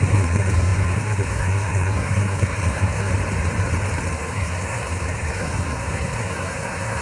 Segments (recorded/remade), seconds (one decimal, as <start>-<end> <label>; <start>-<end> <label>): 0.0-3.1 remade; 3.1-4.1 recorded; 4.1-7.0 remade